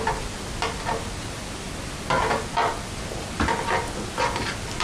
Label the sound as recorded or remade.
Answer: recorded